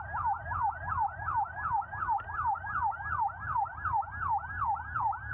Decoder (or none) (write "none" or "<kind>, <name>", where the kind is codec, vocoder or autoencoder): none